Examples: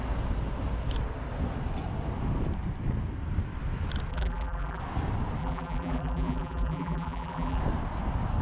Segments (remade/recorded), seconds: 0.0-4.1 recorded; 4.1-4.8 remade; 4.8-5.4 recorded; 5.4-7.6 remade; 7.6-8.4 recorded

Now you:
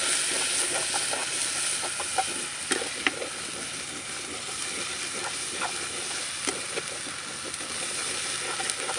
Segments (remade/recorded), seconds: 0.0-1.2 recorded; 1.2-1.7 remade; 1.7-9.0 recorded

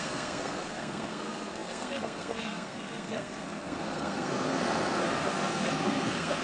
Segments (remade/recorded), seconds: 0.0-6.4 remade

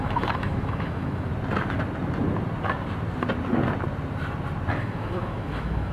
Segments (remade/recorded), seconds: 0.0-1.3 remade; 1.3-4.8 recorded; 4.8-5.9 remade

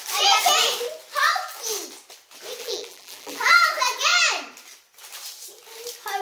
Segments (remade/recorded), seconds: 0.0-2.6 recorded; 2.6-3.5 remade; 3.5-6.2 recorded

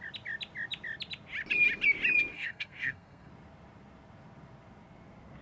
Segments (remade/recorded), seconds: 0.0-2.3 recorded; 2.3-3.3 remade; 3.3-5.4 recorded

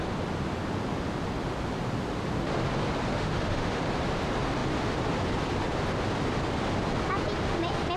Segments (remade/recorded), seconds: 0.0-3.1 recorded; 3.1-3.8 remade; 3.8-8.0 recorded

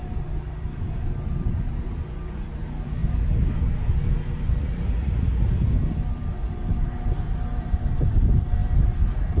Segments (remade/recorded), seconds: 0.0-4.6 recorded; 4.6-5.5 remade; 5.5-9.4 recorded